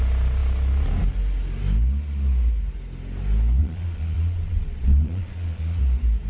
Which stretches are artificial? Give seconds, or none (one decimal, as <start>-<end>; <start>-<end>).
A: 3.6-5.8